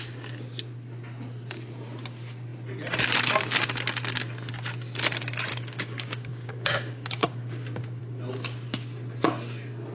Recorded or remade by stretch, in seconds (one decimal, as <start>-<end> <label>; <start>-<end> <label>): 0.0-5.5 recorded; 5.5-8.0 remade; 8.0-9.9 recorded